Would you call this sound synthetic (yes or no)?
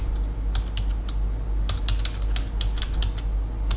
no